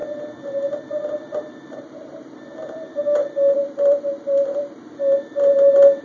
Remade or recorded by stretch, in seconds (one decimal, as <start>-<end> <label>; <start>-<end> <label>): 0.0-6.0 remade